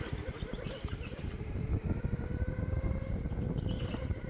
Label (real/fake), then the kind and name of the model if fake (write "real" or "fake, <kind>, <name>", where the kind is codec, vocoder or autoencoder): real